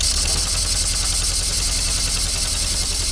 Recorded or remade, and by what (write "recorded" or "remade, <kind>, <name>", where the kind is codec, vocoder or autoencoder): recorded